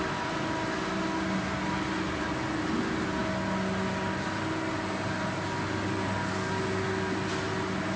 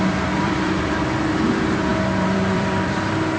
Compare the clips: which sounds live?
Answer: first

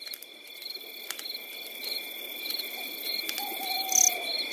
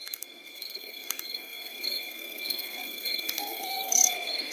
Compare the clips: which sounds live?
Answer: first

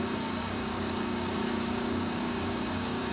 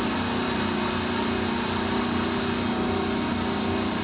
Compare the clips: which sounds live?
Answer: second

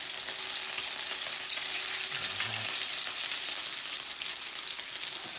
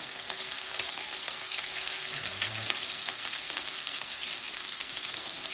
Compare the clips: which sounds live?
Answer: first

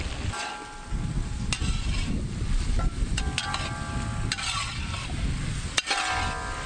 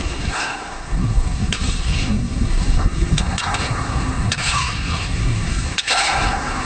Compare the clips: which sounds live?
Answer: first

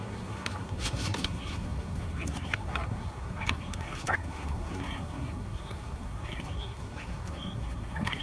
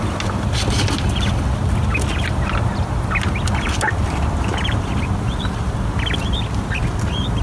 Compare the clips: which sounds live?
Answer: second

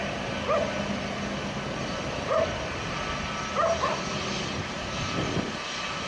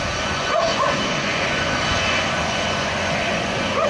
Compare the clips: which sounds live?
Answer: first